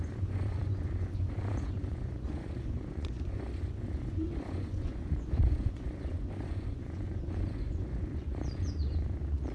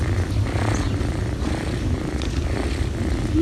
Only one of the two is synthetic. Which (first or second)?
first